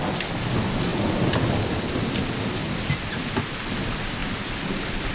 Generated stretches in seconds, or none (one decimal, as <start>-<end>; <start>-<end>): 2.6-3.4; 4.2-5.1